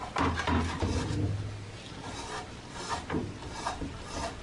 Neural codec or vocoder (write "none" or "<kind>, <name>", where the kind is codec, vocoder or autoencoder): none